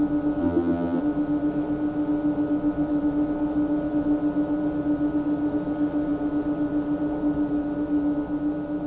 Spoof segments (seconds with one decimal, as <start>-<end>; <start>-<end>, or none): 0.4-1.0